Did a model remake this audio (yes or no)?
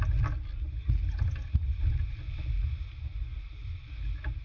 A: no